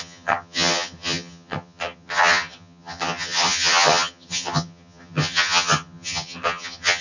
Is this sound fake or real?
fake